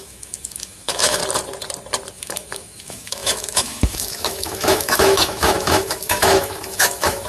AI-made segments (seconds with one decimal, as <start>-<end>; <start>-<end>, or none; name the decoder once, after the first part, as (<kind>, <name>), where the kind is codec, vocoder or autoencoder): 0.0-1.2 (autoencoder, DAC-VAE); 2.1-7.3